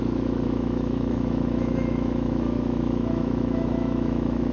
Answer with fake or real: fake